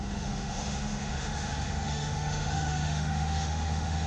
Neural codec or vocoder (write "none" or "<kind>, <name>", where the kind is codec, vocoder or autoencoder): autoencoder, DAC-VAE